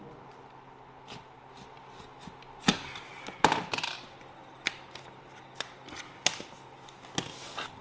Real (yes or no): yes